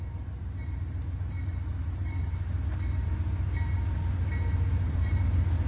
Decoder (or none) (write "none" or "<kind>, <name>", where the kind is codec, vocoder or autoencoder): none